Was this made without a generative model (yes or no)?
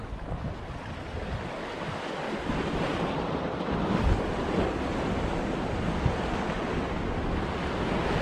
yes